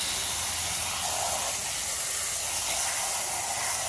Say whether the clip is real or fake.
real